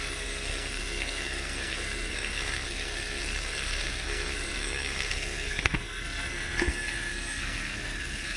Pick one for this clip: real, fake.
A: fake